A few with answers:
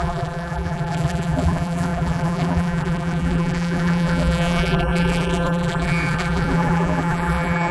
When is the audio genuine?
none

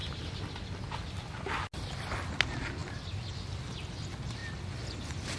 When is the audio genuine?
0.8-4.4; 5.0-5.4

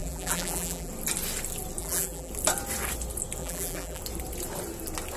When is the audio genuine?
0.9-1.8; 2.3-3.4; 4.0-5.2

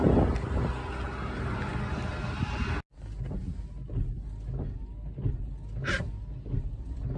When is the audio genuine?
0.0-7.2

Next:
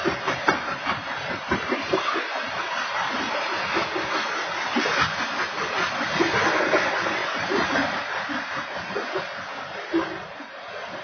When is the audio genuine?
3.7-7.2; 7.9-11.0